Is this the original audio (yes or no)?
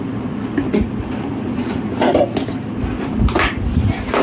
yes